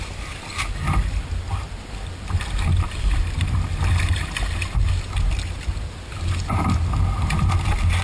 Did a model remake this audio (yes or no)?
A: no